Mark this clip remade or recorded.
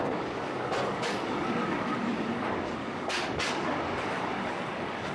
remade